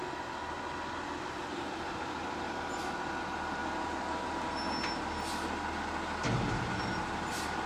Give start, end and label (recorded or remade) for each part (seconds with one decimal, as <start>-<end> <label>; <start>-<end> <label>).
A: 0.0-7.7 recorded